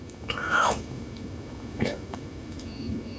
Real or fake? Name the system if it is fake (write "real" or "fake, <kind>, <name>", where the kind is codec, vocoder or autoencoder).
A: fake, autoencoder, DAC-VAE